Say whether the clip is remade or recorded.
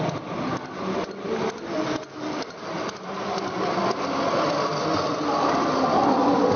recorded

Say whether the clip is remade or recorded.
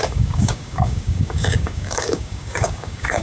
remade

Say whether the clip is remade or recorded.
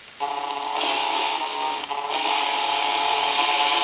remade